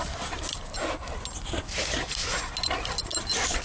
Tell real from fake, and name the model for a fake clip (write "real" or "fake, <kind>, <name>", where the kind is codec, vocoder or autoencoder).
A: real